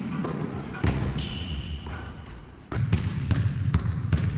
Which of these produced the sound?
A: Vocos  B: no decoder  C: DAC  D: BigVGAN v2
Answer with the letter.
A